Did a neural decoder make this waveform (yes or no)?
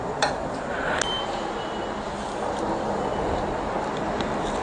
no